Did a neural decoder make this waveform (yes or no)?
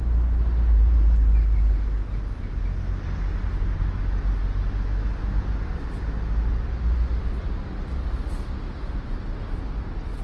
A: no